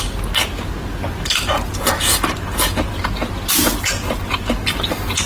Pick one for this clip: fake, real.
real